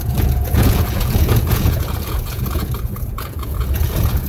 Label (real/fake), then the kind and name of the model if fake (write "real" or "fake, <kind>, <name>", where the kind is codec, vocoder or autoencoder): fake, vocoder, Vocos